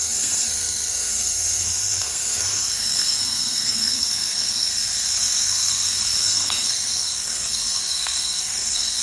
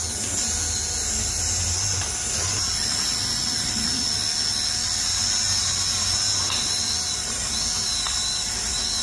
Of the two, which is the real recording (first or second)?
second